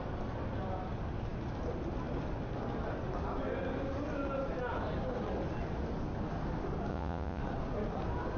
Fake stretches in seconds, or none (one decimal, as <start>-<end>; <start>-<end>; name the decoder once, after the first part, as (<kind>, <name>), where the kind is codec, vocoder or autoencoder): 6.9-7.4 (vocoder, Vocos)